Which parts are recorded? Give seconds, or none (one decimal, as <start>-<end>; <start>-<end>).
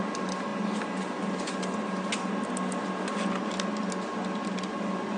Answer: 0.0-5.2